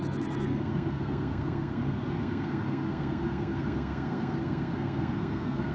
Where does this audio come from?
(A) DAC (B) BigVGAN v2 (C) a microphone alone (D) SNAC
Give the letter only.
D